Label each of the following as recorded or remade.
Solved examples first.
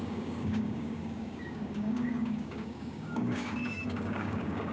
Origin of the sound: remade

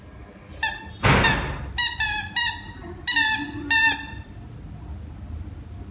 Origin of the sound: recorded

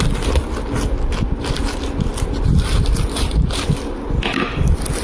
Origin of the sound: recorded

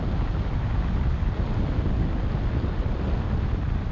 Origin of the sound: recorded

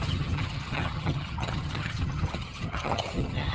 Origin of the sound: remade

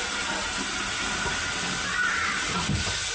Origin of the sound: recorded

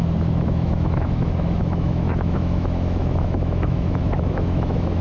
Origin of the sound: remade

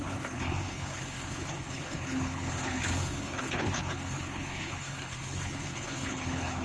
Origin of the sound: remade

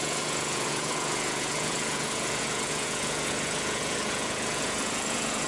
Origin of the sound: remade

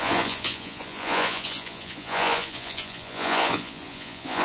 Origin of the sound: remade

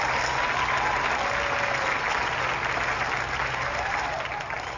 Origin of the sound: recorded